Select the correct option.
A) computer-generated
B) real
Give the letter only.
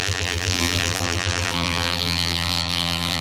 A